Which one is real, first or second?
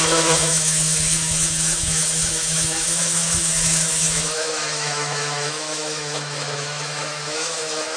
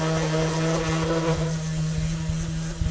second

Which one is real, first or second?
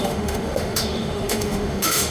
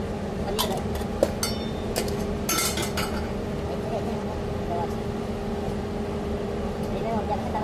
second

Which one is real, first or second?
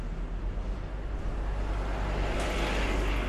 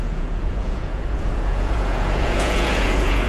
first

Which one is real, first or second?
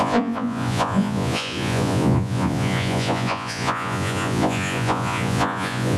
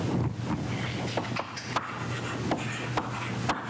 second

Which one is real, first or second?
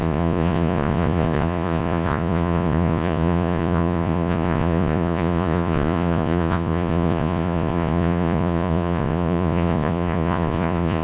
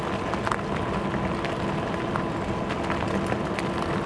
second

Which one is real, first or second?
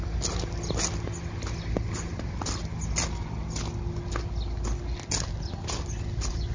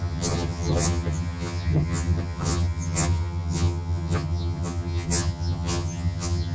first